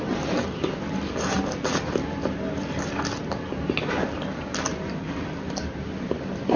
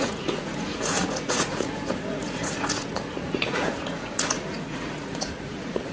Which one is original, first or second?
first